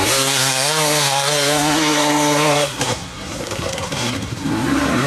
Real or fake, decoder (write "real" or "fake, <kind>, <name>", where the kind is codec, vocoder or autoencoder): fake, codec, SNAC